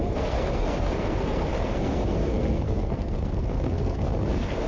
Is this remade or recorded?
remade